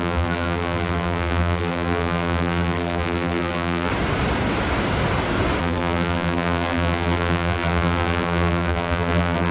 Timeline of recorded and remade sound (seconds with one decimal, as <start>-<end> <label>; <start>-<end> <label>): 0.0-3.9 remade; 3.9-5.6 recorded; 5.6-9.5 remade